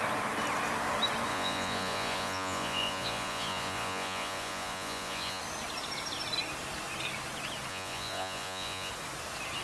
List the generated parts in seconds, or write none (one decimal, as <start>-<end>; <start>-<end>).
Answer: 1.3-5.4; 7.7-8.9